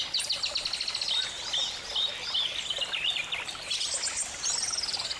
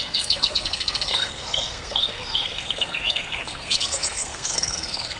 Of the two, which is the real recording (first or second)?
first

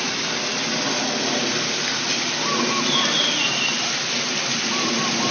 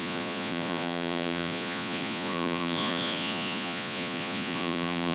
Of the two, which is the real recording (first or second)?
first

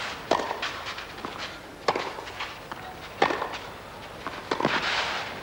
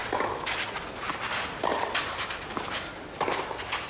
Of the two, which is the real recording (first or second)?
first